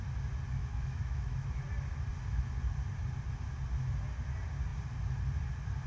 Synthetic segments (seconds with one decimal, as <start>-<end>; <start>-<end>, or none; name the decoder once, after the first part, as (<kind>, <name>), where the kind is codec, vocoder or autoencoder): 0.6-1.6 (autoencoder, DAC-VAE)

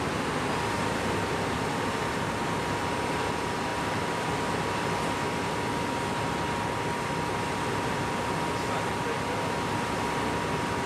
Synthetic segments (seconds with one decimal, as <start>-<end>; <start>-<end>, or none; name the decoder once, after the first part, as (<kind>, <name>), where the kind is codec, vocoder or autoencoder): none

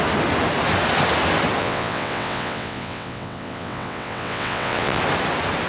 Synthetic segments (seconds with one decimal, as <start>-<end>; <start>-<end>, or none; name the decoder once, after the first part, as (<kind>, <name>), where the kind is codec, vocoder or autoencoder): 1.6-5.0 (vocoder, WaveNeXt)